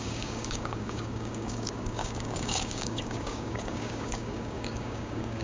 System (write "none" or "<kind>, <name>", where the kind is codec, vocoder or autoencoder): codec, DAC